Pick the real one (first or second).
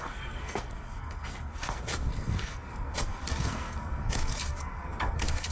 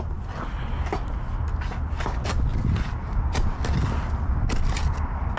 second